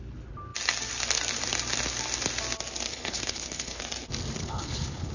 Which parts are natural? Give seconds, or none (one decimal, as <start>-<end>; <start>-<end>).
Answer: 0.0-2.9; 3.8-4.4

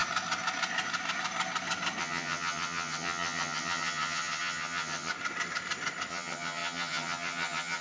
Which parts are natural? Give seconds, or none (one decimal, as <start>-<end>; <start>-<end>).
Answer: 0.0-2.0; 5.1-6.1

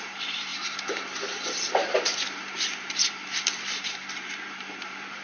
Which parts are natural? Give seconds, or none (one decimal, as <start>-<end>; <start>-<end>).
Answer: none

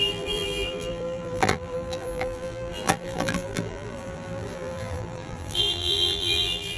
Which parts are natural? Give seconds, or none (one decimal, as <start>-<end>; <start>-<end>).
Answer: none

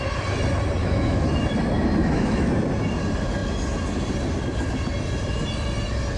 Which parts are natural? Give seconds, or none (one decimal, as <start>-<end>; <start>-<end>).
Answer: 0.0-0.8; 1.3-2.0; 2.5-6.2

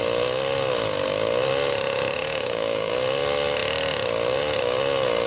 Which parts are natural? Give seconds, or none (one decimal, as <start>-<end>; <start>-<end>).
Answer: 0.0-2.2; 2.9-5.3